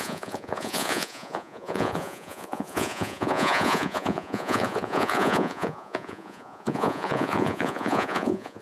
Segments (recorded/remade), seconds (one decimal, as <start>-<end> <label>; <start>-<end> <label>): 0.0-8.6 remade